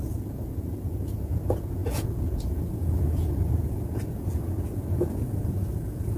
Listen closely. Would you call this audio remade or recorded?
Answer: remade